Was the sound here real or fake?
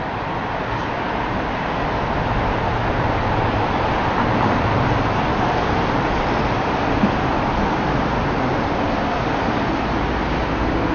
real